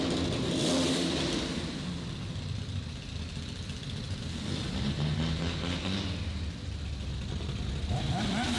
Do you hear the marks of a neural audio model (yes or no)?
no